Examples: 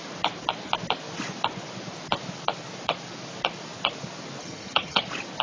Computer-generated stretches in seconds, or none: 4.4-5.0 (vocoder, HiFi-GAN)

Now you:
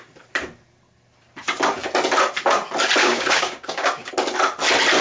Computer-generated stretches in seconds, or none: 3.0-4.1 (codec, DAC)